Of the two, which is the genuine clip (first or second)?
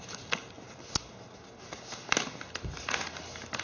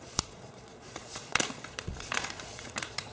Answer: first